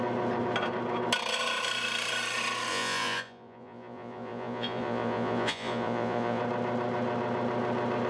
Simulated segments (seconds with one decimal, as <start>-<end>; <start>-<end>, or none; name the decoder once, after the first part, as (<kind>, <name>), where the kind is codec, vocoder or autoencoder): 2.7-6.4 (vocoder, Vocos)